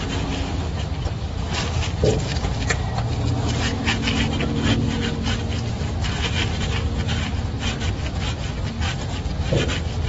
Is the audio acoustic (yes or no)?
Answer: yes